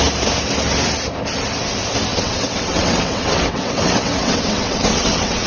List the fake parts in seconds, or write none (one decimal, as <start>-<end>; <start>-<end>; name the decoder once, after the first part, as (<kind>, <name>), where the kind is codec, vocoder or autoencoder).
2.1-5.5 (vocoder, WaveNeXt)